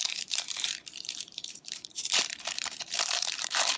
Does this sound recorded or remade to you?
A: remade